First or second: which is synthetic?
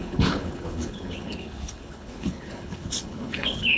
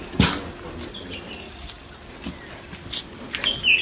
first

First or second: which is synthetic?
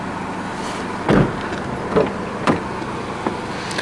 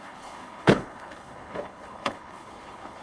second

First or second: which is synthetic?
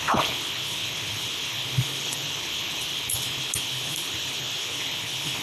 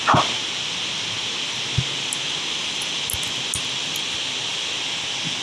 first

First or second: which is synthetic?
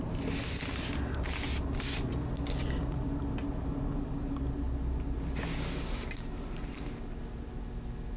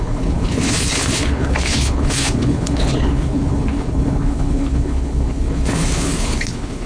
second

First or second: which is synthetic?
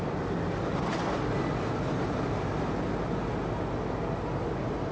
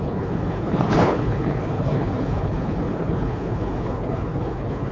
second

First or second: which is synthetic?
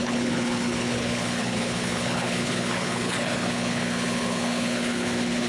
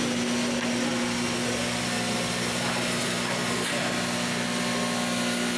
first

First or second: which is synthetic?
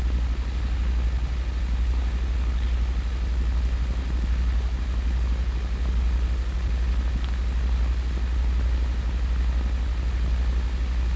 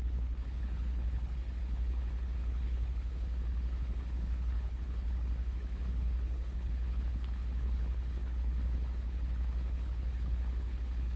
second